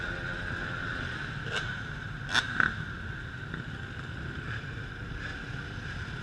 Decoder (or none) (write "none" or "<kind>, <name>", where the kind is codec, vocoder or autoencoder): none